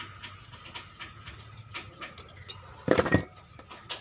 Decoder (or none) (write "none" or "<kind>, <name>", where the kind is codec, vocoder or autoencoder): none